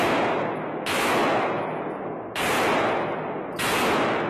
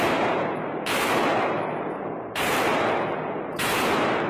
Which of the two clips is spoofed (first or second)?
second